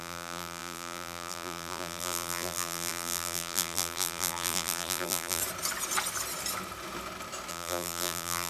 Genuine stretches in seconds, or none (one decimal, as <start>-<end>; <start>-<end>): 5.4-7.5